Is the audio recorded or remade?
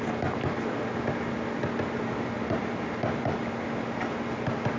recorded